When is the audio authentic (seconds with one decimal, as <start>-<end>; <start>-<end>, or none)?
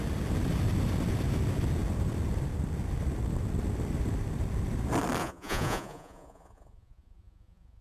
0.0-5.2